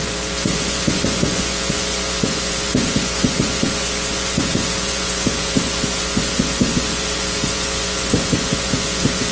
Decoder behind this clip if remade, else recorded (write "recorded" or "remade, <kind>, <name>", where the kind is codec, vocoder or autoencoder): remade, vocoder, Vocos